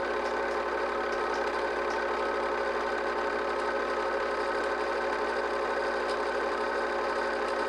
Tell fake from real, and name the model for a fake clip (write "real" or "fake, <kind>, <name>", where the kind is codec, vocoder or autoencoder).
real